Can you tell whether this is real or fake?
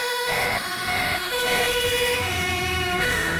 fake